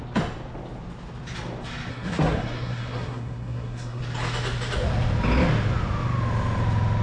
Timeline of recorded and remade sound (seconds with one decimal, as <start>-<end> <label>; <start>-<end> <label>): 0.0-1.9 recorded; 1.9-4.0 remade; 4.0-7.0 recorded